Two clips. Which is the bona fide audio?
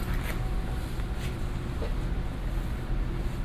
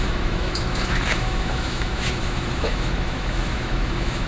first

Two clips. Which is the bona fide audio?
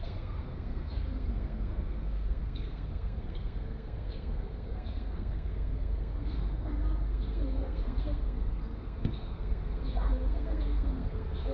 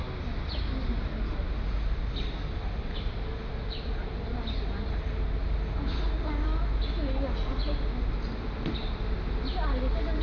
second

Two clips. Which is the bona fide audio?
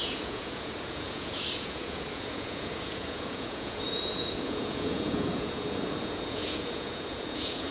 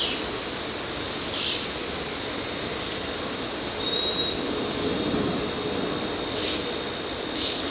second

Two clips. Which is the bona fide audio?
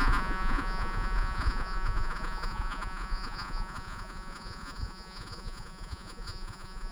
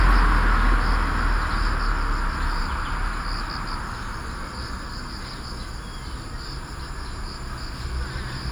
second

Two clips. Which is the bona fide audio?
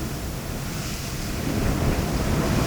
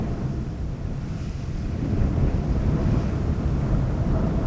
first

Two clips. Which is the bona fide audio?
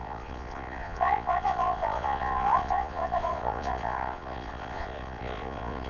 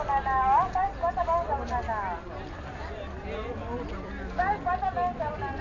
second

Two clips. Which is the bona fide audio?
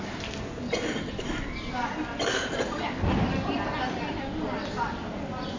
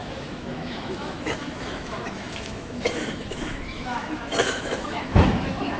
first